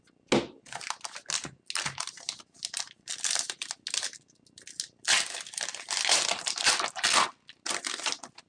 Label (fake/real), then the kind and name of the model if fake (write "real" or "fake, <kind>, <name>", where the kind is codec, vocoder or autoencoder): real